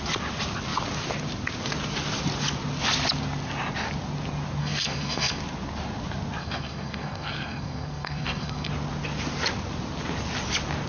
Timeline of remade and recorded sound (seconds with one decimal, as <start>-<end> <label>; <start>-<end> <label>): 0.0-4.6 recorded; 4.6-5.4 remade; 5.4-6.4 recorded; 6.4-8.7 remade; 8.7-10.9 recorded